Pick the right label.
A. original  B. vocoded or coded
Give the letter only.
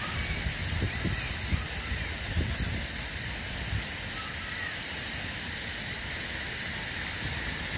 A